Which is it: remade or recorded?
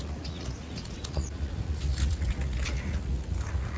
remade